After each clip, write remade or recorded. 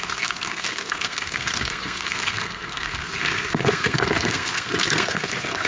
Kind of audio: remade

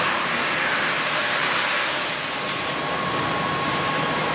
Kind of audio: remade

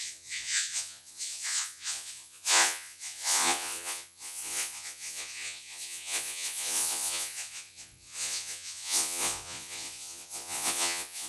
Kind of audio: remade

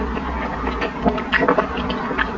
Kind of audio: recorded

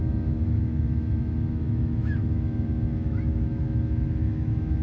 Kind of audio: remade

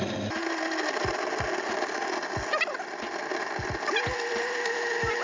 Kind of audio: recorded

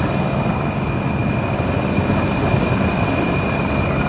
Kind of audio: recorded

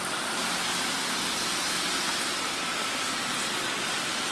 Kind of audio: recorded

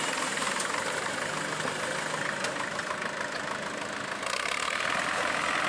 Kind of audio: recorded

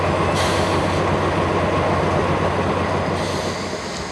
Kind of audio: recorded